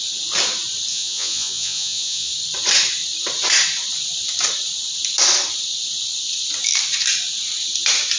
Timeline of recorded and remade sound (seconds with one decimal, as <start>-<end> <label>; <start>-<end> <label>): 0.0-0.9 recorded; 0.9-2.3 remade; 2.3-8.2 recorded